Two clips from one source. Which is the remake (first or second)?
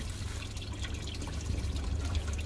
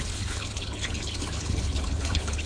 second